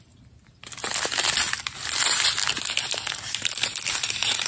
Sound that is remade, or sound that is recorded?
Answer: recorded